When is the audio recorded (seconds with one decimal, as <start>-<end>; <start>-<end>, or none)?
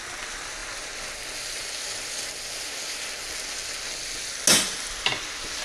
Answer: 0.0-5.6